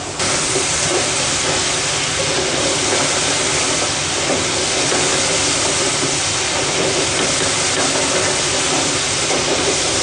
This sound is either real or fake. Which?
real